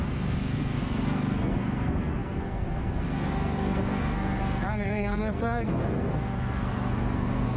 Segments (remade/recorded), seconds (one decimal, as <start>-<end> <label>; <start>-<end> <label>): 0.0-7.6 remade